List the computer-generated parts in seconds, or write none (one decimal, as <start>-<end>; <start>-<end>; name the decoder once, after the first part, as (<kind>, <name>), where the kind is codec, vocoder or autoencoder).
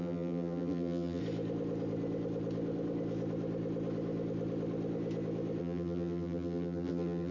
0.0-1.2 (vocoder, BigVGAN v2); 5.6-7.3